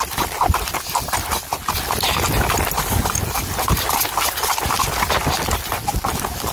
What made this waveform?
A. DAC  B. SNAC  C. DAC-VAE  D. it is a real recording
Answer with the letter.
D